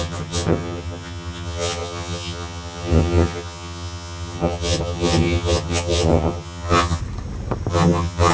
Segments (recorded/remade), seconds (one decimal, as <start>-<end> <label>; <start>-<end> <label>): 0.0-7.0 remade; 7.0-7.7 recorded; 7.7-8.3 remade

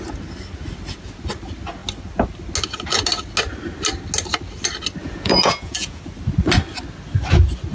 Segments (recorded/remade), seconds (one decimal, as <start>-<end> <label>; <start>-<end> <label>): 0.0-5.0 recorded; 5.0-6.0 remade; 6.0-7.7 recorded

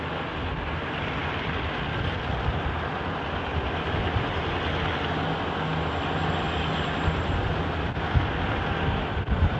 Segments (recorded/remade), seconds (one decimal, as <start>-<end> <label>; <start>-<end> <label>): 0.0-1.2 recorded; 1.2-4.4 remade; 4.4-9.6 recorded

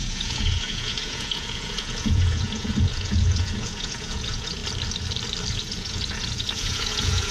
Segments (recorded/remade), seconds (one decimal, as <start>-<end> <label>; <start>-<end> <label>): 0.0-4.6 remade; 4.6-5.5 recorded; 5.5-7.3 remade

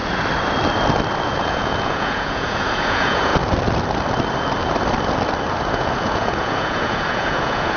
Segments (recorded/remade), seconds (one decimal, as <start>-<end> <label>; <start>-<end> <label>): 0.0-1.2 recorded; 1.2-3.3 remade; 3.3-5.7 recorded; 5.7-7.8 remade